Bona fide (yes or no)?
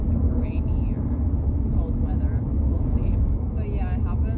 yes